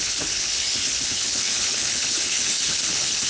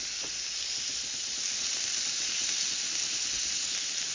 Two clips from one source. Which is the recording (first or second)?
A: second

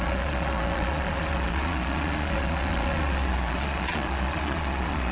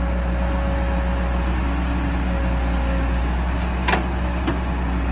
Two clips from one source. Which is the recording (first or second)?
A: second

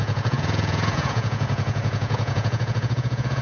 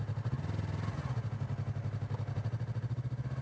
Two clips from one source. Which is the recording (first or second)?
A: second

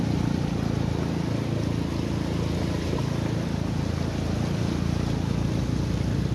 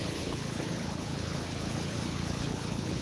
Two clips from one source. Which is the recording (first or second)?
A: first